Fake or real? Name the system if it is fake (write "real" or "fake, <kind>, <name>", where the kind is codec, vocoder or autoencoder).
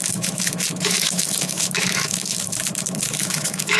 fake, autoencoder, DAC-VAE